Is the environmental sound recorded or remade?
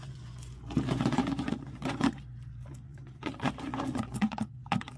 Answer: remade